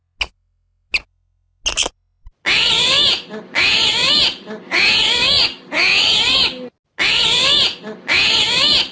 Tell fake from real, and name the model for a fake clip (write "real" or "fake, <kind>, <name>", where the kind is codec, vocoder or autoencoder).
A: real